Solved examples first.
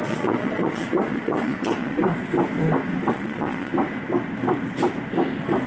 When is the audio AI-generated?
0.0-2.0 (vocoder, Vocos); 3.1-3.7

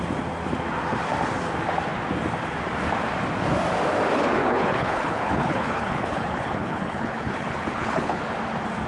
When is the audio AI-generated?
4.4-8.2 (codec, HILCodec)

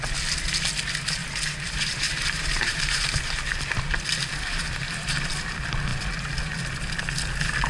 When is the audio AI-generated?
1.2-3.0 (vocoder, BigVGAN v2); 4.6-5.3

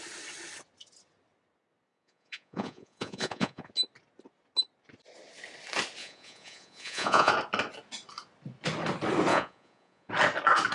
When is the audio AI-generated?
1.9-3.7 (vocoder, Vocos); 6.0-7.3; 9.3-10.1

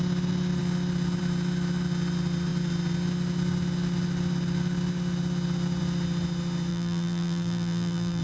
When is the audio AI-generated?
6.7-8.2 (vocoder, BigVGAN v2)